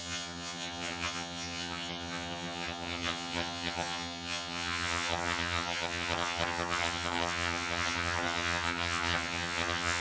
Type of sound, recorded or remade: remade